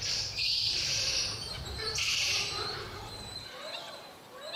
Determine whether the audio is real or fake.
fake